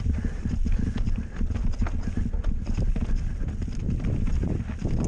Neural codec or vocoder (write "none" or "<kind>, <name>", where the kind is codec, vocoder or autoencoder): none